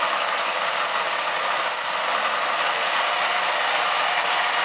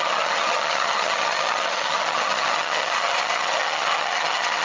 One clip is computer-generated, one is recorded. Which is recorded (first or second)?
first